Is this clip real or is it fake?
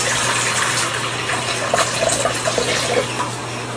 real